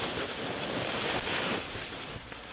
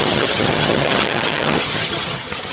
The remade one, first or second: second